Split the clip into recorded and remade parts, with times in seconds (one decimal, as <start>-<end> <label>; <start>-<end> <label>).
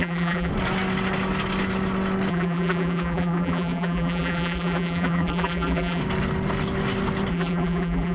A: 0.0-0.5 remade; 0.5-2.3 recorded; 2.3-6.0 remade; 6.0-7.3 recorded; 7.3-8.1 remade